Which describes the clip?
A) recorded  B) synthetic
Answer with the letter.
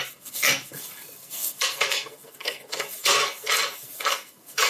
B